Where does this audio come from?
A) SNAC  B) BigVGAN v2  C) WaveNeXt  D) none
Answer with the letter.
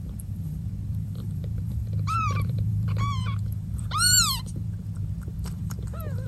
B